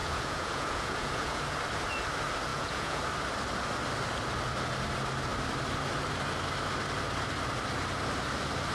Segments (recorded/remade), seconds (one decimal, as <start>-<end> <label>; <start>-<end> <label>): 0.0-1.4 remade; 1.4-2.5 recorded; 2.5-3.0 remade; 3.0-8.7 recorded